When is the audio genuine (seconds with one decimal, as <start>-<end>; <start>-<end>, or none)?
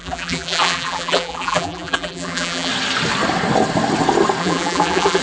2.7-4.4